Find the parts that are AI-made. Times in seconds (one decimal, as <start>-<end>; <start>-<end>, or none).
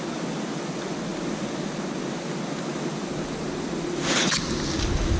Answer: none